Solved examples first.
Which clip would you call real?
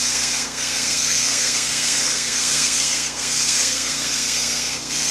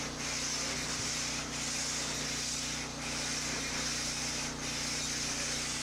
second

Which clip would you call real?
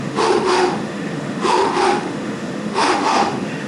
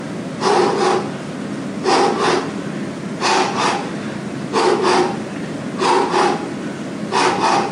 second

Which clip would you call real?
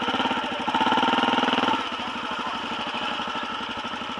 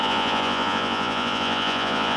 first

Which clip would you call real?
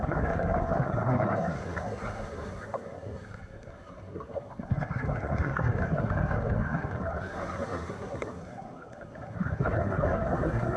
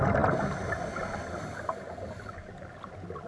second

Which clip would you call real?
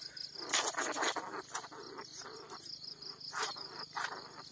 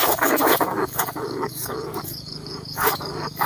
first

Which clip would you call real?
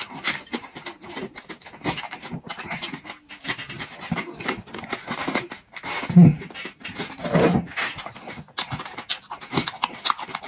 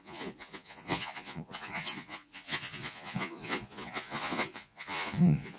first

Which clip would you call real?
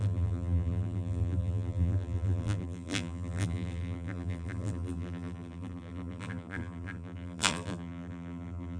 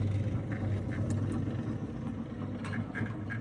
second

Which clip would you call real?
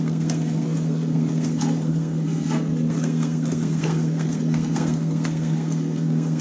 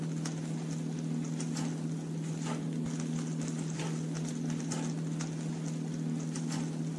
second